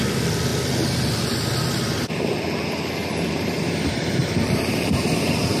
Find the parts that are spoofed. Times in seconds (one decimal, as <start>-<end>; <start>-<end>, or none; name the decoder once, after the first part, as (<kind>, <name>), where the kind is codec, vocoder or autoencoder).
3.0-5.6 (vocoder, BigVGAN v2)

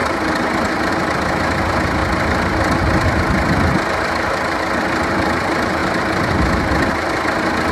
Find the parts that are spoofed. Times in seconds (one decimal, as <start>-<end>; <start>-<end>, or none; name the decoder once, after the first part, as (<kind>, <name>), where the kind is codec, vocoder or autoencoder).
0.0-7.7 (vocoder, BigVGAN v2)

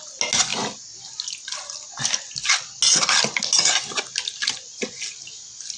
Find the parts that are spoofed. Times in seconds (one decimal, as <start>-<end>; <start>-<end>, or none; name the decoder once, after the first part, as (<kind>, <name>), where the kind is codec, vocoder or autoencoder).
none

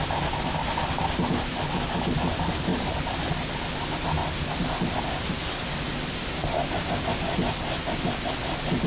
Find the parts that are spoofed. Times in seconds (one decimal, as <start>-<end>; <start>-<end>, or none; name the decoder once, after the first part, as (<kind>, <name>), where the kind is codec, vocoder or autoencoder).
2.7-3.3 (vocoder, BigVGAN v2); 4.2-5.2

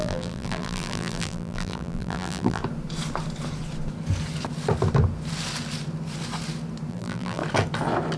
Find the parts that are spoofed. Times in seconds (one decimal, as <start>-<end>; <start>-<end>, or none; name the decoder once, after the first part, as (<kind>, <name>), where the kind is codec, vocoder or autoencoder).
0.0-2.6 (vocoder, BigVGAN v2); 6.9-7.4

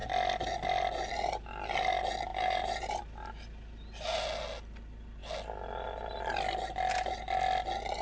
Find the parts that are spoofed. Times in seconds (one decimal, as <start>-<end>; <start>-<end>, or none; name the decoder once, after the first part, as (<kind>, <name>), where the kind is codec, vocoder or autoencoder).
2.3-3.0 (vocoder, BigVGAN v2)